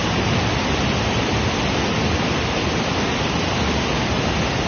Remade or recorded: recorded